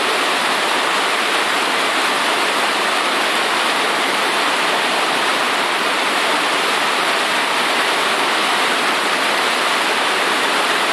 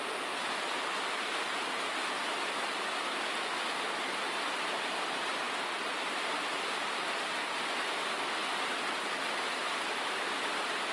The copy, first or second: first